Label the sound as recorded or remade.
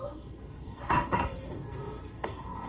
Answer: remade